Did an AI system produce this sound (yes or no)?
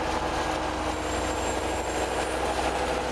no